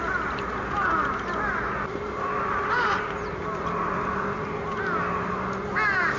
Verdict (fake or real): real